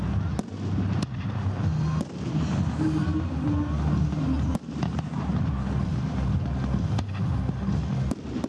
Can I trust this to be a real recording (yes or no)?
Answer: yes